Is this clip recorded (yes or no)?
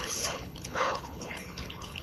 no